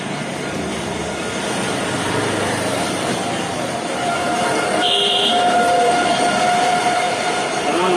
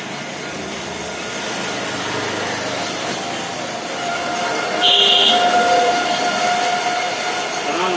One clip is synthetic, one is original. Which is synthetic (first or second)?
first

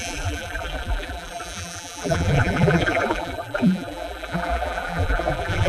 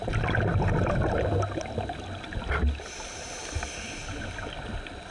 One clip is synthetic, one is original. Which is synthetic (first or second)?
first